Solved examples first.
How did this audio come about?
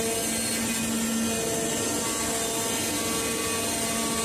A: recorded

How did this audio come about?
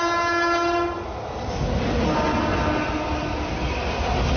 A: recorded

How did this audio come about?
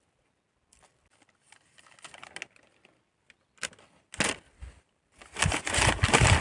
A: recorded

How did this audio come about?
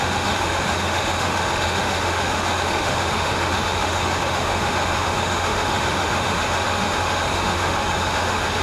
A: remade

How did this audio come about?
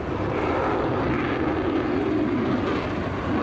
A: recorded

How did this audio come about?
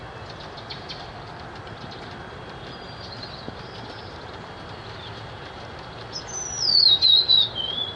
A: recorded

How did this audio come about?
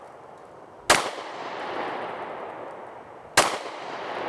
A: recorded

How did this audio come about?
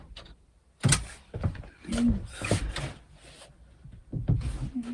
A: recorded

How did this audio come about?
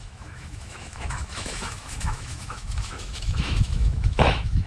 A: remade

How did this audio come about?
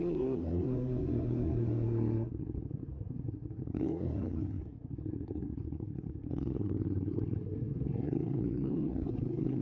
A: remade